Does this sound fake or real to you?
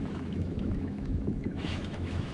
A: fake